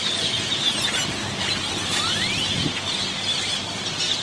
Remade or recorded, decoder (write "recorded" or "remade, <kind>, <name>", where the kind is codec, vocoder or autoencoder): recorded